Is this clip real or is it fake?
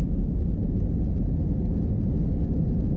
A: real